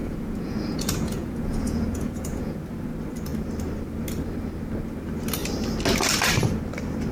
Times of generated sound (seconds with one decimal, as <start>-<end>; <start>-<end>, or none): 0.0-2.6